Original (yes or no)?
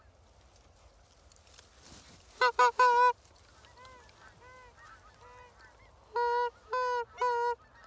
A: yes